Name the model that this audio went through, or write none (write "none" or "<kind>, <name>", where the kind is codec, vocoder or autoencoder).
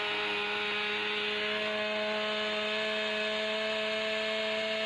none